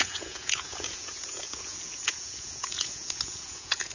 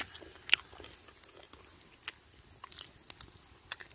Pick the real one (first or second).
second